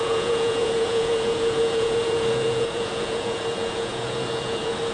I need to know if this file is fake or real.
fake